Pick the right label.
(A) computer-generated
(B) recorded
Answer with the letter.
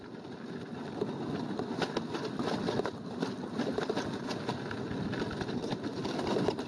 B